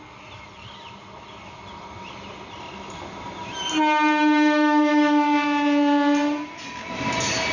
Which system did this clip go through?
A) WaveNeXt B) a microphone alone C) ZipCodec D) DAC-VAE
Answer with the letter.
B